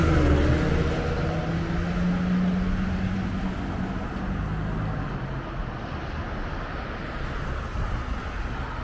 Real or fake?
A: real